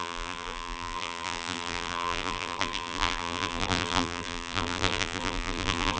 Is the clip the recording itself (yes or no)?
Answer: no